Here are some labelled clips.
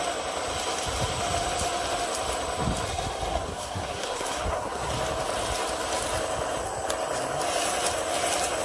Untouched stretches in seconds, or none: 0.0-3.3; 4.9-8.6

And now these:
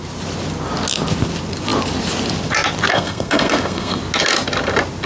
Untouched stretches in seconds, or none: 0.0-2.9; 4.0-5.1

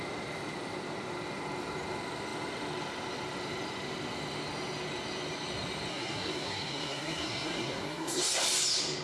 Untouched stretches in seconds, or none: 0.0-5.9; 8.4-9.0

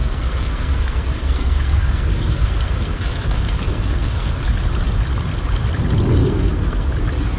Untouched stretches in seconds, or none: 4.4-6.2; 6.9-7.4

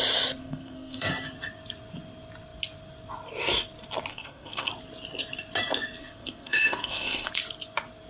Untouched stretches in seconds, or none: 0.0-0.4; 1.1-4.1; 4.7-6.0; 7.3-8.1